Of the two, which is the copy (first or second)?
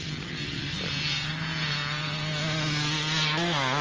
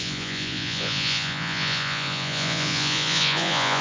second